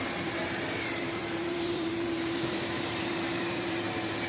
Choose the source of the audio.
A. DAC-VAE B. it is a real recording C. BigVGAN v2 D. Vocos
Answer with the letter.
C